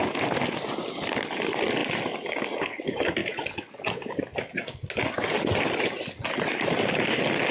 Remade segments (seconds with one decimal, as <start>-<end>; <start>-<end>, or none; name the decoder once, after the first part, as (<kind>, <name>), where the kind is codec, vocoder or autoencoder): none

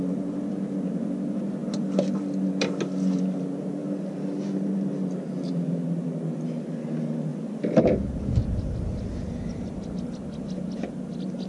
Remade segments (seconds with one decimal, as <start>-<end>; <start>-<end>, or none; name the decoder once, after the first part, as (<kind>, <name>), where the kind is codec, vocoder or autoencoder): none

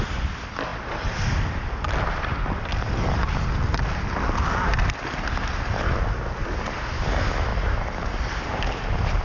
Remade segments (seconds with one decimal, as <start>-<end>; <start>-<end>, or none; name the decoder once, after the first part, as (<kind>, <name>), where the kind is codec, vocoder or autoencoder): none

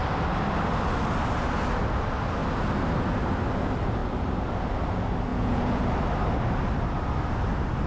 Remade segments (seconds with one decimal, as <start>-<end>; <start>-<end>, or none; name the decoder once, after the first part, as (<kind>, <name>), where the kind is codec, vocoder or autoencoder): 5.3-5.8 (vocoder, Vocos)

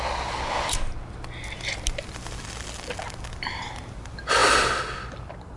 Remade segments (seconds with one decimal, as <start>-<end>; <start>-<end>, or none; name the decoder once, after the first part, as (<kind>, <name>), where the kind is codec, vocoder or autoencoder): none

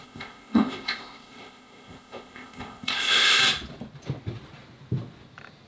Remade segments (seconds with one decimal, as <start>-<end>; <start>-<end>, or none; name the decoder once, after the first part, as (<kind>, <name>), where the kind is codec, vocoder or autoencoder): 0.0-3.4 (codec, ZipCodec)